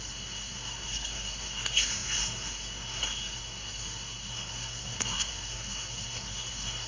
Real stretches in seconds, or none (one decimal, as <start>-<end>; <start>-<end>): none